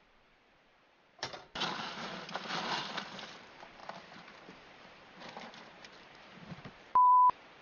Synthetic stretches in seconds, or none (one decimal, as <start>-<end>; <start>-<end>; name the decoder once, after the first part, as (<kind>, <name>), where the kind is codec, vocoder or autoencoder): 0.0-7.6 (vocoder, BigVGAN v2)